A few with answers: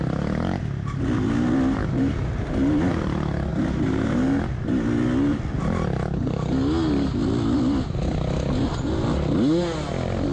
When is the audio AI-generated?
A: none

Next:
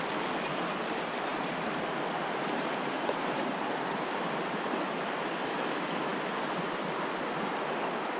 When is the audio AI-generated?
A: 1.3-4.0 (vocoder, BigVGAN v2)

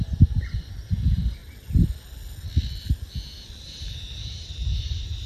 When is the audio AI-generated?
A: 0.0-1.4 (vocoder, BigVGAN v2); 3.6-5.3

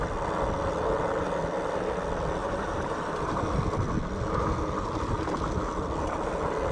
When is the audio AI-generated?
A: 2.4-3.4 (vocoder, BigVGAN v2)

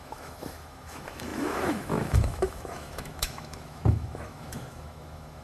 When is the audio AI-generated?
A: 0.0-5.4 (autoencoder, DAC-VAE)

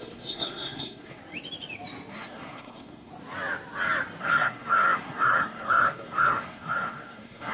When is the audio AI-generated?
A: 0.0-1.2 (codec, SNAC); 2.1-3.1; 4.2-7.5